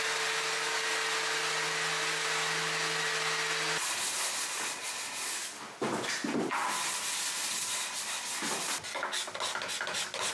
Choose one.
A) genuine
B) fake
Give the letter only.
A